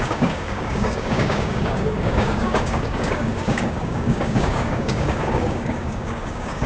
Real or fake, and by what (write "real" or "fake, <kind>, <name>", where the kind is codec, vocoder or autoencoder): fake, codec, DAC